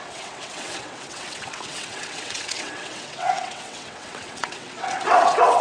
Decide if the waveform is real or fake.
fake